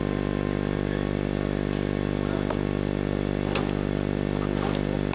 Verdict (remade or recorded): recorded